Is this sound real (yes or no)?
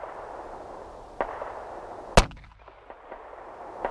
yes